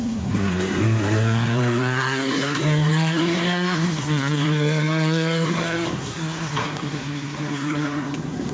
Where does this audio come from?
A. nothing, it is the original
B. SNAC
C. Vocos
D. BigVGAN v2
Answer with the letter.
B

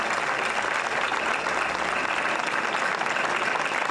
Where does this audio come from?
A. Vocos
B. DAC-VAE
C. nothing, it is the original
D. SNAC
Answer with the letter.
C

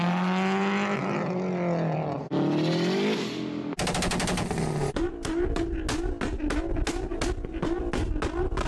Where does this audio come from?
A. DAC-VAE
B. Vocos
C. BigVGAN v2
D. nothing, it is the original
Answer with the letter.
D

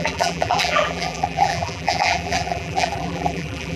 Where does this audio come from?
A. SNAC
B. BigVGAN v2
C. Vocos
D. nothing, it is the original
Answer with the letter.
B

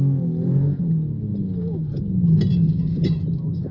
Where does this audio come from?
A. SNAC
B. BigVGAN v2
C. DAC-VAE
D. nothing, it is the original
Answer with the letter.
D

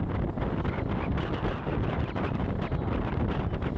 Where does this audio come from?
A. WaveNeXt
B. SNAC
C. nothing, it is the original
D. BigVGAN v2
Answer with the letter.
C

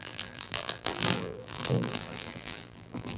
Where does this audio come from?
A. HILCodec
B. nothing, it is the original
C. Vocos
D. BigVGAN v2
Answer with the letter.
D